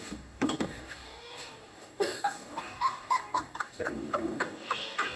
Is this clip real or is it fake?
fake